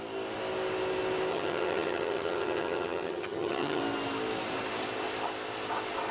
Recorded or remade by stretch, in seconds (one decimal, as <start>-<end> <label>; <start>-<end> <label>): 0.0-1.3 recorded; 1.3-3.8 remade; 3.8-6.1 recorded